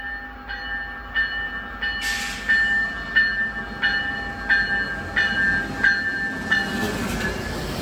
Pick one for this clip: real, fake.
real